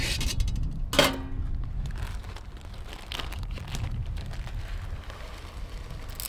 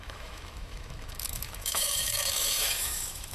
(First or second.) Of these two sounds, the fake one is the second